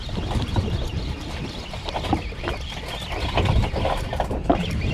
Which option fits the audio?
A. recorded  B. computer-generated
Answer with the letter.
A